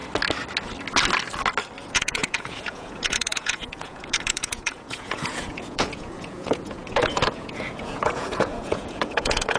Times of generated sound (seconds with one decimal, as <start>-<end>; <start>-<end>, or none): 1.9-9.6